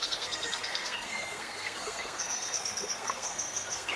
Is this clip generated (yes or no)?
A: yes